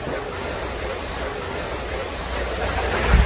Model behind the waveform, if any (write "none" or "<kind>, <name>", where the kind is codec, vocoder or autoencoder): none